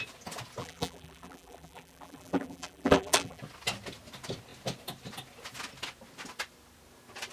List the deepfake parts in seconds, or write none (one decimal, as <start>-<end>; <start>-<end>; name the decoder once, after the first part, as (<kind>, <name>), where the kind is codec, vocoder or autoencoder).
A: 0.6-3.4 (vocoder, BigVGAN v2)